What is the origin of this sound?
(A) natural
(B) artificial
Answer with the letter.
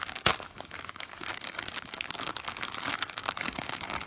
B